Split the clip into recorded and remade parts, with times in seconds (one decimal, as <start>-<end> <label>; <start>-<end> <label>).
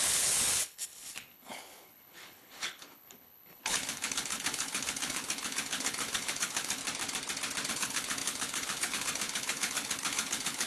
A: 0.0-6.8 remade; 6.8-7.7 recorded; 7.7-10.7 remade